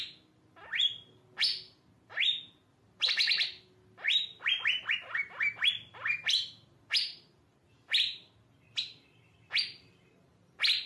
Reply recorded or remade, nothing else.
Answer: recorded